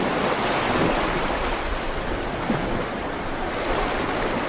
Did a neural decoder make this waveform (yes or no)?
no